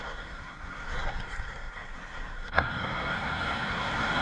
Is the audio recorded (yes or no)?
no